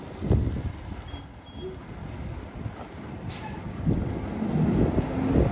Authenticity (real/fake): real